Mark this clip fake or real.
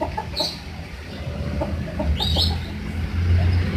real